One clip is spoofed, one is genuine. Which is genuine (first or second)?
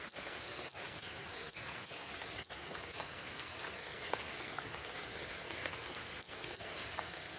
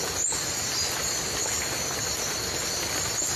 second